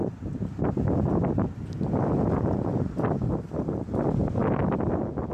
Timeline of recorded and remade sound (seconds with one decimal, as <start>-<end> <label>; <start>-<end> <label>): 0.0-0.6 remade; 0.6-4.4 recorded; 4.4-5.3 remade